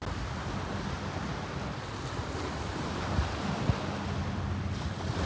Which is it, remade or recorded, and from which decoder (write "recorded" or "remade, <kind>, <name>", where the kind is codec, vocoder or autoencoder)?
recorded